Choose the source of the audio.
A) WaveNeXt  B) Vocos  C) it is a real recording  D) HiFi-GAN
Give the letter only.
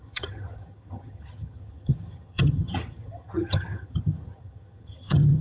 D